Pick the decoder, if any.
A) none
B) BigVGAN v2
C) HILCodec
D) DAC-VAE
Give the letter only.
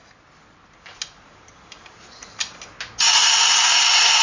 A